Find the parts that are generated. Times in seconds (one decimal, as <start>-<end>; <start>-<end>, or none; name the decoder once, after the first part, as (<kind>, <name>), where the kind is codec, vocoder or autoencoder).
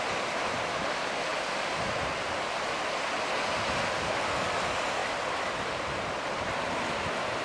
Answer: 1.3-2.5 (vocoder, BigVGAN v2); 5.0-5.7